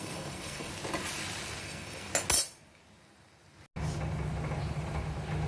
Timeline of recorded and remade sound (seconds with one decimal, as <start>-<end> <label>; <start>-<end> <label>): 0.0-0.7 remade; 0.7-1.6 recorded; 1.6-2.1 remade; 2.1-5.5 recorded